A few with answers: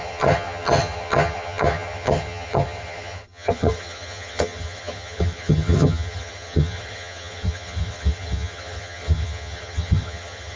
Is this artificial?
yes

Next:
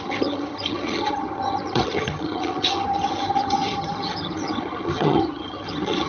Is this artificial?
yes